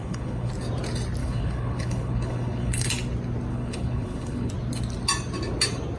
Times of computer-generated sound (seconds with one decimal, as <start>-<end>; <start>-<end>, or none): 0.0-0.5; 1.2-2.9; 3.5-4.5